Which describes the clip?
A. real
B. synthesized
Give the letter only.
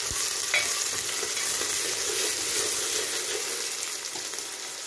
A